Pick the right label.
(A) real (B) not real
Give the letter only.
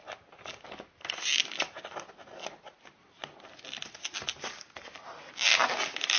A